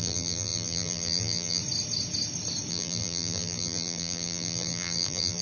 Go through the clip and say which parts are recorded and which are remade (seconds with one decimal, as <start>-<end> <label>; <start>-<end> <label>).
0.0-1.6 remade; 1.6-2.7 recorded; 2.7-5.4 remade